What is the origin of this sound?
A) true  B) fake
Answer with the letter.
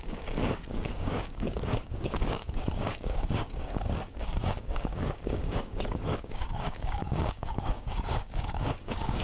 B